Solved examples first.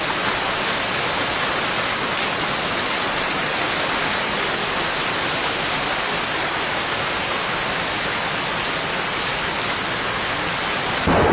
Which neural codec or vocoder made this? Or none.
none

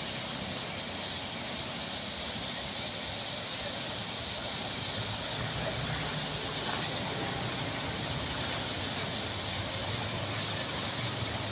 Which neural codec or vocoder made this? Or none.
none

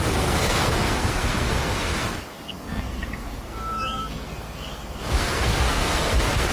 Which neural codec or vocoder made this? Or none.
codec, SNAC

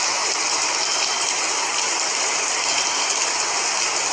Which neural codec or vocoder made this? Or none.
none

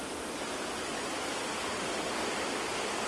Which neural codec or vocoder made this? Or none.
none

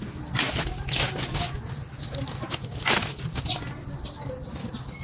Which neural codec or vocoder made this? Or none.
none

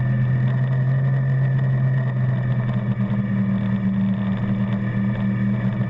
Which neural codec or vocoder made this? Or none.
none